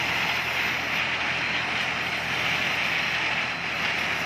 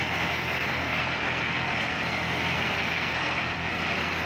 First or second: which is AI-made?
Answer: second